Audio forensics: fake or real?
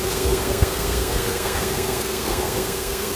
fake